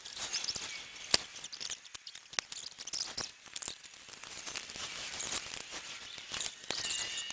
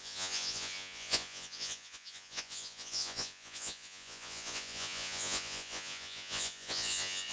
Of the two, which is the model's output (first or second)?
second